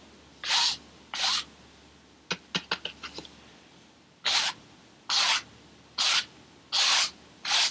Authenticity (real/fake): real